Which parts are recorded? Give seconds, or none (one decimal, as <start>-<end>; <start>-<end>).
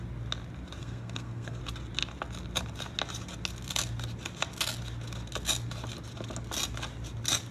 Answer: 0.0-0.8; 1.6-7.5